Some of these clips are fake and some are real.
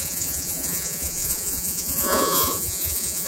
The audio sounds fake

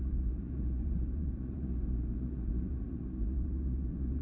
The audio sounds fake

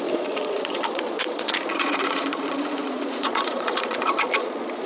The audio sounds fake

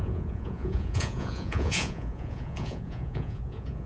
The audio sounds fake